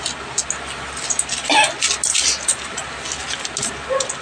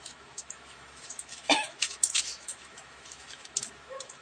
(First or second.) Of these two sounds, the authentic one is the first